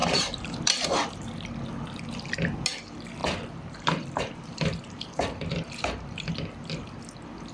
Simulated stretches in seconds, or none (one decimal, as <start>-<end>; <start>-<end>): 0.0-1.3; 3.2-6.3